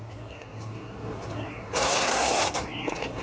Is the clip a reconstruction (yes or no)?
yes